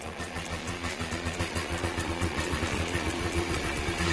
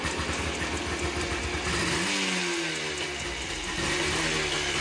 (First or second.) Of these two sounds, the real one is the second